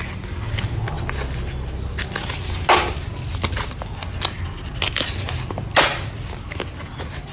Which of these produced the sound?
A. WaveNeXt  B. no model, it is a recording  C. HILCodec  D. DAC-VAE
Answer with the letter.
B